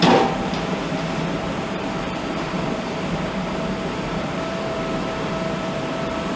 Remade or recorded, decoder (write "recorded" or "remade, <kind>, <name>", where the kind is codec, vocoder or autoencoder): remade, vocoder, BigVGAN v2